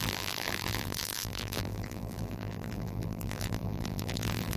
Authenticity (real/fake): fake